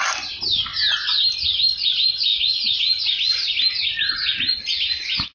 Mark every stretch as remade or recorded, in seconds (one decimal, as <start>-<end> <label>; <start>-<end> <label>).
0.0-0.7 remade; 0.7-1.2 recorded; 1.2-2.3 remade; 2.3-3.5 recorded; 3.5-4.3 remade; 4.3-5.3 recorded

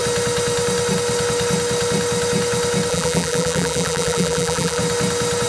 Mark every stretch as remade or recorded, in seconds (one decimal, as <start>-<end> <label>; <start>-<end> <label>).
0.0-2.9 recorded; 2.9-4.8 remade; 4.8-5.5 recorded